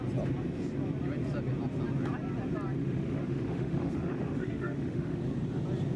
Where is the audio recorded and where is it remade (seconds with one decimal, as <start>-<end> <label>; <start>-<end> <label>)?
0.0-2.8 recorded; 2.8-5.2 remade; 5.2-6.0 recorded